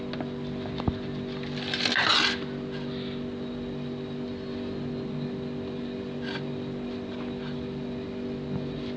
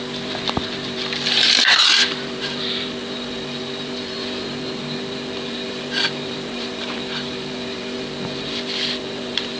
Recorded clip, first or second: first